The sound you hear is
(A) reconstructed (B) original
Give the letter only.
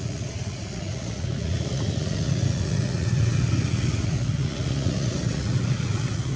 A